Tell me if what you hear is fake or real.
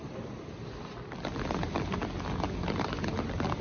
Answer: real